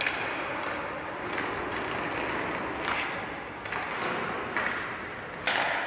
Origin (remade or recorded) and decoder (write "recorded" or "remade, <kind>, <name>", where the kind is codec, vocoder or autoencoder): recorded